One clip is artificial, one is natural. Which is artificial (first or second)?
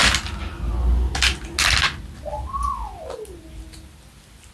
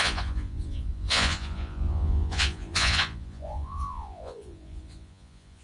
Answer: second